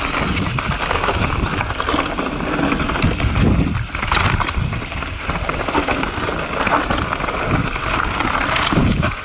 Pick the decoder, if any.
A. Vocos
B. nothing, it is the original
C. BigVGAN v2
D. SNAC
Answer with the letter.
B